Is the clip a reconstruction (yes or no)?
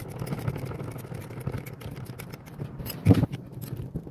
yes